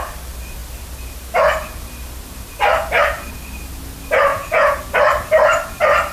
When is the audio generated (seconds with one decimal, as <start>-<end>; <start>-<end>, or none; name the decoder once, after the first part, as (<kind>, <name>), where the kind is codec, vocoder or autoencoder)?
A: 4.3-4.8 (vocoder, Vocos)